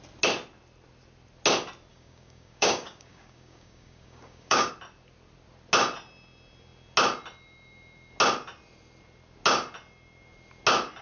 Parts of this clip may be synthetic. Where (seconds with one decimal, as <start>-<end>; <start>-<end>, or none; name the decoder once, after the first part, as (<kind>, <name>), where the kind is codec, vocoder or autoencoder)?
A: 1.9-4.7 (codec, DAC)